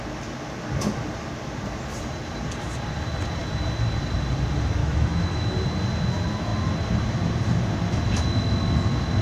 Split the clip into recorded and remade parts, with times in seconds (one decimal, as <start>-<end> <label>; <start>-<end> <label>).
0.0-4.8 recorded; 4.8-5.5 remade; 5.5-9.2 recorded